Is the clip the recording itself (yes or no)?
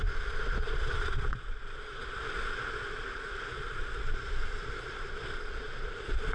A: no